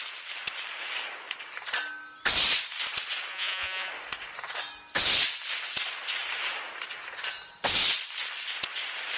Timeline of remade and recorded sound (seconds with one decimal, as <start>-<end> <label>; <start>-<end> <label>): 0.0-3.3 recorded; 3.3-3.9 remade; 3.9-9.2 recorded